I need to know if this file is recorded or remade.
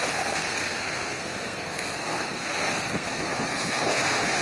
remade